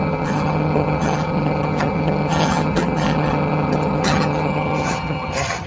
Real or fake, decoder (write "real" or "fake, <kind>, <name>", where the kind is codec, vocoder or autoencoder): fake, vocoder, HiFi-GAN